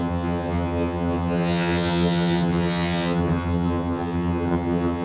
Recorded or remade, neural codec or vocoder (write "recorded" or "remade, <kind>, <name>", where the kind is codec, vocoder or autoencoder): remade, vocoder, HiFi-GAN